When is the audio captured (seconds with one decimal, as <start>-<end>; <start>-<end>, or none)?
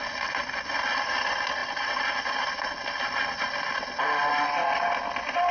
0.0-5.5